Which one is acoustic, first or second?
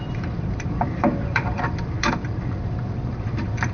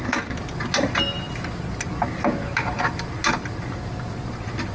second